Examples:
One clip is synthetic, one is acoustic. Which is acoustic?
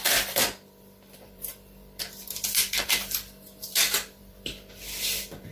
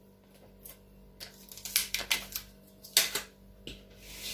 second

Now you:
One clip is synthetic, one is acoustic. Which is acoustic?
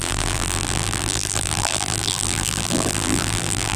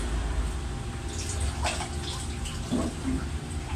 second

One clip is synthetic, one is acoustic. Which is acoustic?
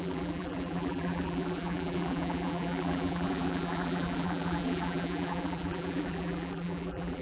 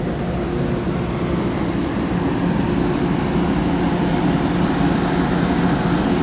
second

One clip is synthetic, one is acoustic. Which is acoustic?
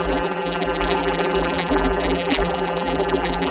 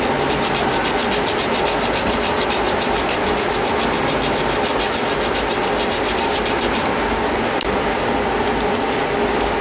second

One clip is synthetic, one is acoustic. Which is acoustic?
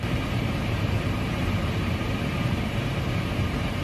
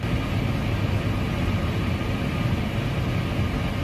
second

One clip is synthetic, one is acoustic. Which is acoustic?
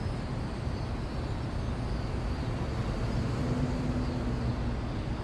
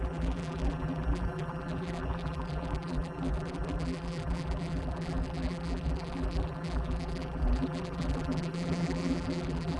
first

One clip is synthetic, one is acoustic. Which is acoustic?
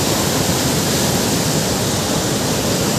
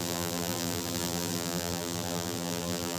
first